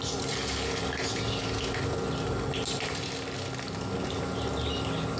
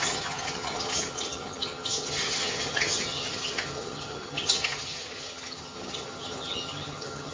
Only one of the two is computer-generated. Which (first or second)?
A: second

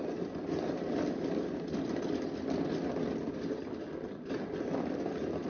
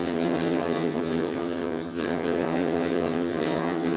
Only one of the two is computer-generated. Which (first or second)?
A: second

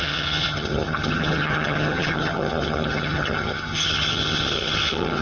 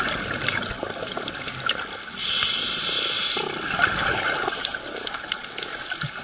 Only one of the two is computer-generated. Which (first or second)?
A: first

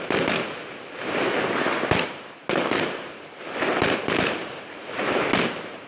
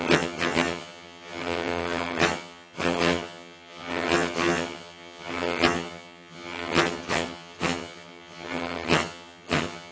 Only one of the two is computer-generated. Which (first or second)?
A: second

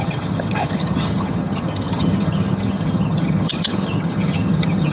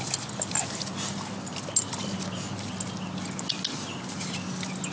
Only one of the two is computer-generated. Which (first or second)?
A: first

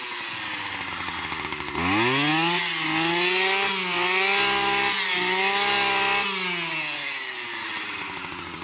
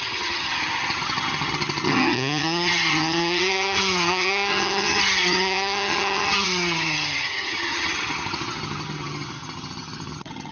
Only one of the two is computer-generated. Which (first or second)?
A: second